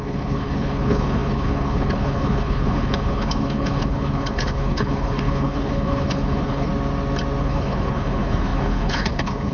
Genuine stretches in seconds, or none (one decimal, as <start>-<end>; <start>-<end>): 6.7-7.4